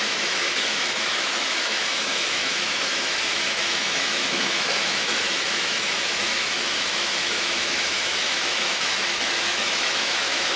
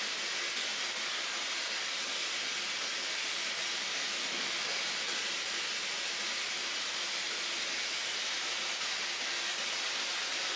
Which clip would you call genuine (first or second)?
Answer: second